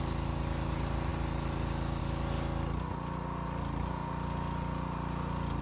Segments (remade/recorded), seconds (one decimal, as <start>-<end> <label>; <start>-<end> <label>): 0.0-5.6 recorded